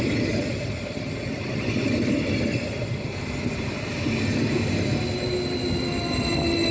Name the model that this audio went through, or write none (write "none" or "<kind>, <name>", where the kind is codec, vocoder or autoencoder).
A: none